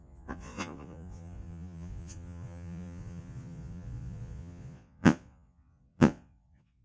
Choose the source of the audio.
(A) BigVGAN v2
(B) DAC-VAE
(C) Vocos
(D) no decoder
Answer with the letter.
C